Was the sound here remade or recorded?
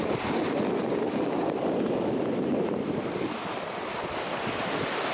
recorded